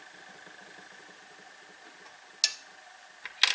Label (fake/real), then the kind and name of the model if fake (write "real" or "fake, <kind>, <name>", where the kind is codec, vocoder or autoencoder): real